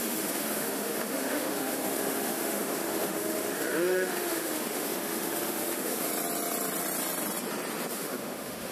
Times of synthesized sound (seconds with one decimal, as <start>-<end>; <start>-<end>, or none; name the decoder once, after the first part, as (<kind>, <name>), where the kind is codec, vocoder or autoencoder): 0.0-6.1 (autoencoder, DAC-VAE); 7.9-8.7